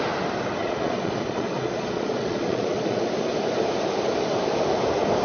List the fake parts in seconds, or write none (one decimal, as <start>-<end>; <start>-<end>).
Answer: 0.6-3.1